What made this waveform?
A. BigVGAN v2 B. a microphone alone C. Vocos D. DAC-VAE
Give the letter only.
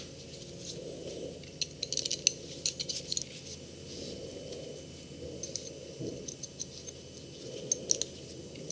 B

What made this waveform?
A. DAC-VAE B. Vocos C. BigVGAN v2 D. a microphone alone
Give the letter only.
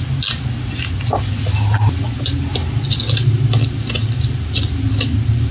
D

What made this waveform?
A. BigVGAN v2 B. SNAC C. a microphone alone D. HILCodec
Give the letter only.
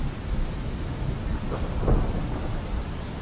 C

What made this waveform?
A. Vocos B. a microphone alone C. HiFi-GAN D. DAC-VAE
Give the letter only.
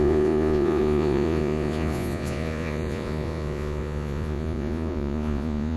A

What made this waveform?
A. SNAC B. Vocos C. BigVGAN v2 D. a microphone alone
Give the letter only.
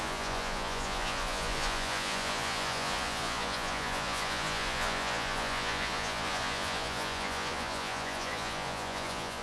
B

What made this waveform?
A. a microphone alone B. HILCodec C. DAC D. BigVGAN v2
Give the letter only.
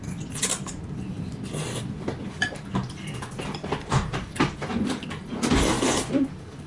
D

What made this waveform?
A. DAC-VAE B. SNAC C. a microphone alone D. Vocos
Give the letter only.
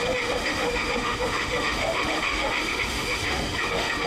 A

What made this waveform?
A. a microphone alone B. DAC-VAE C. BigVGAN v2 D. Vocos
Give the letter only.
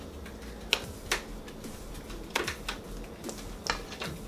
A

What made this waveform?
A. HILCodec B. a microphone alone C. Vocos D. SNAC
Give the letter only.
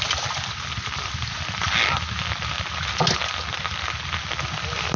B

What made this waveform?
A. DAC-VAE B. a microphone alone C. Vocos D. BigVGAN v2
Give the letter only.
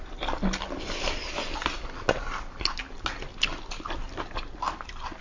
B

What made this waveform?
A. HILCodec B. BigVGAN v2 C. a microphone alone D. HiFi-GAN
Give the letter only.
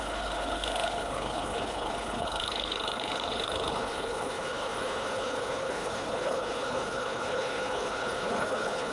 A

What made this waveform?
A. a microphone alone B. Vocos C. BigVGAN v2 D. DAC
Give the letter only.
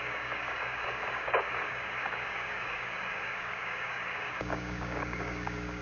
D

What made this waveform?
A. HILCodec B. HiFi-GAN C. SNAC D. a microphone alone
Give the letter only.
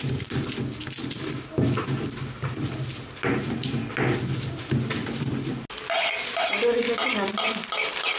D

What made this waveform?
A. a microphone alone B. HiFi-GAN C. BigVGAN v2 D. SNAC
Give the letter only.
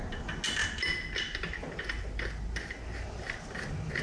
A